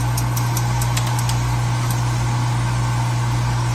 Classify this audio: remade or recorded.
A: recorded